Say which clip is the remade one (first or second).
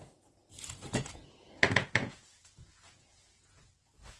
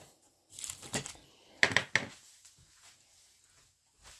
first